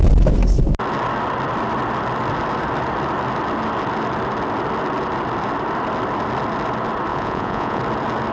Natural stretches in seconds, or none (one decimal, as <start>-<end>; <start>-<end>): 0.0-7.1; 7.8-8.3